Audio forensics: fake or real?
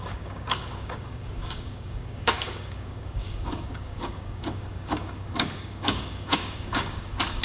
fake